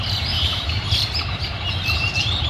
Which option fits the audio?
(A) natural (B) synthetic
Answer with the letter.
A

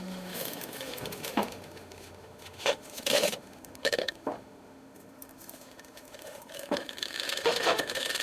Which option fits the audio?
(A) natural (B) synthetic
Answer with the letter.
B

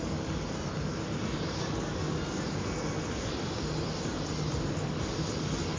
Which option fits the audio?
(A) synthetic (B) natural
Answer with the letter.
B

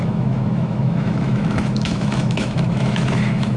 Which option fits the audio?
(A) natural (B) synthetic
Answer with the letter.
B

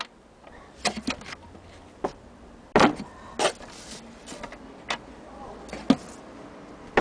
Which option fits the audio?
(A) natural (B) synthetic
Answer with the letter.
A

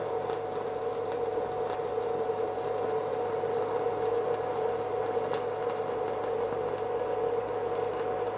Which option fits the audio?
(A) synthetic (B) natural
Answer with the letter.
B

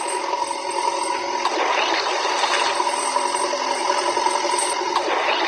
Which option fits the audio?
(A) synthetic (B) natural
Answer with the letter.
B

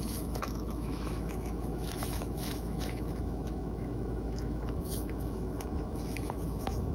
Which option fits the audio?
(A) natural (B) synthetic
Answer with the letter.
B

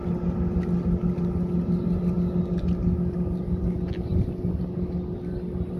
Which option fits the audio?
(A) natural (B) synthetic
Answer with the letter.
A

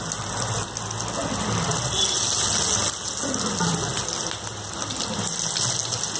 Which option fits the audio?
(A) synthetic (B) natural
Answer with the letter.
B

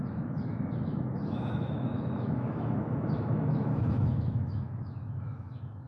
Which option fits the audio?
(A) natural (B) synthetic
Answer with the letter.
B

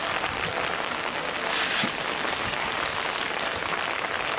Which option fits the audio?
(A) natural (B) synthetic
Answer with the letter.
A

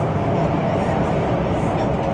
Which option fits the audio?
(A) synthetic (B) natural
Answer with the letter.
B